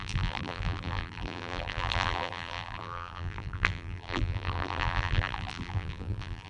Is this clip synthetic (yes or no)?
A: yes